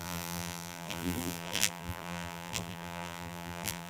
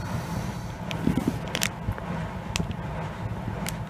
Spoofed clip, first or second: first